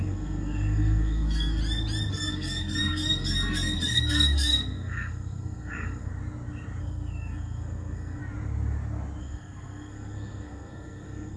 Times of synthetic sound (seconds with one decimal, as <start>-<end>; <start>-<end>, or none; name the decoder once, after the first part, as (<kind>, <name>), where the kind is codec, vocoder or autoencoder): 0.0-1.6 (codec, SNAC); 2.1-6.1; 6.8-8.2; 9.2-11.4